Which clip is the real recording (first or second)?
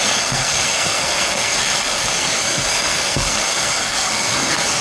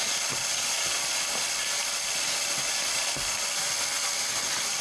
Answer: second